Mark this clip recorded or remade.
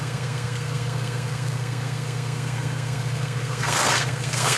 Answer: remade